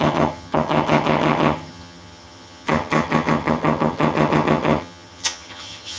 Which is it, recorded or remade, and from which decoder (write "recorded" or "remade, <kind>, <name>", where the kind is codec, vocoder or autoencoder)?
remade, vocoder, HiFi-GAN